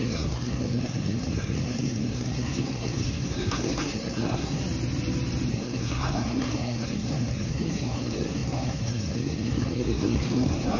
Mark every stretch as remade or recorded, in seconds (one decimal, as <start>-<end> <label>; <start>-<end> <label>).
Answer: 0.0-4.6 remade; 4.6-5.5 recorded; 5.5-10.8 remade